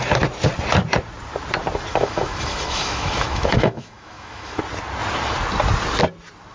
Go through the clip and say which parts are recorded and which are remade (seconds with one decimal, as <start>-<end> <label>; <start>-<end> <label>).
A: 0.0-1.9 recorded; 1.9-4.6 remade; 4.6-6.5 recorded